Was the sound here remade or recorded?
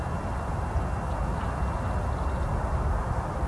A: recorded